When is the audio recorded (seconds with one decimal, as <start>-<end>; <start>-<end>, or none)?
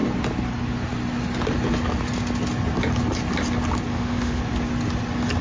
0.0-3.9; 4.4-5.4